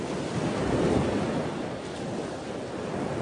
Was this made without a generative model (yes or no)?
yes